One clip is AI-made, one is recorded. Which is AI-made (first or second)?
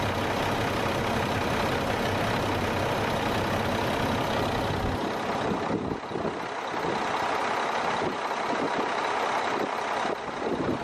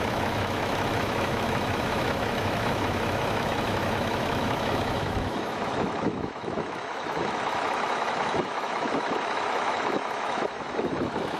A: second